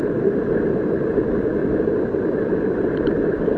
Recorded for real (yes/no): yes